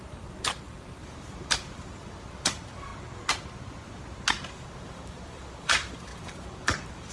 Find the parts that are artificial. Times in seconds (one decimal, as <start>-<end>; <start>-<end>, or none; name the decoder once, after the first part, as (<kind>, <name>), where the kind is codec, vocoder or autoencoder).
0.0-2.9 (vocoder, BigVGAN v2); 4.3-7.1